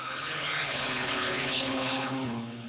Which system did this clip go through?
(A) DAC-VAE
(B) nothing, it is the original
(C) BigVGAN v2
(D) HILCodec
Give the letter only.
D